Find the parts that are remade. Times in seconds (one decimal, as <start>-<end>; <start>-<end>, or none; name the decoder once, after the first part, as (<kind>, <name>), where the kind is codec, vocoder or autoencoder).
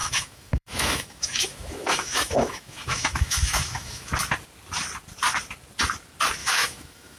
0.0-4.1 (autoencoder, DAC-VAE); 6.4-7.2